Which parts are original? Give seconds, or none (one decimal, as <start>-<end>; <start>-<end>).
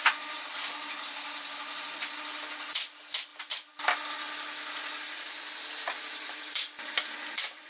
0.0-7.7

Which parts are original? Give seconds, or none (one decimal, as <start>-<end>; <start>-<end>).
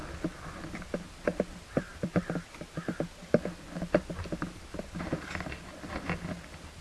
0.0-6.8